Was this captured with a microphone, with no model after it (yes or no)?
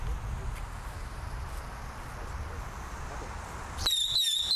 yes